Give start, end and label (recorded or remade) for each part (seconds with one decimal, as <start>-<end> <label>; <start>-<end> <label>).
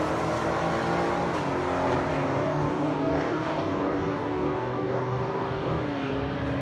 0.0-2.1 recorded; 2.1-6.1 remade; 6.1-6.6 recorded